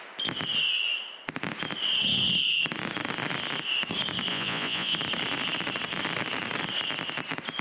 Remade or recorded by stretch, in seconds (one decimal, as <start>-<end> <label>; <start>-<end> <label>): 0.0-4.3 recorded; 4.3-4.9 remade; 4.9-7.6 recorded